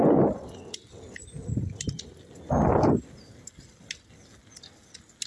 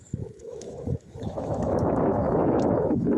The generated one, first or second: second